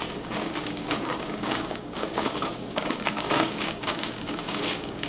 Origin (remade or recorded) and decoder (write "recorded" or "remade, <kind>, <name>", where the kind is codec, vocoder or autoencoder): remade, codec, DAC